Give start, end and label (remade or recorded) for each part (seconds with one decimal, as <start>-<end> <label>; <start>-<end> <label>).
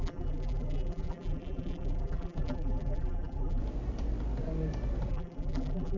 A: 0.0-3.6 remade; 3.6-5.1 recorded; 5.1-6.0 remade